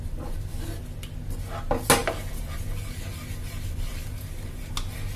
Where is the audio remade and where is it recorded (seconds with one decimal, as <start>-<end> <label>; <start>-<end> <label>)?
0.0-5.2 recorded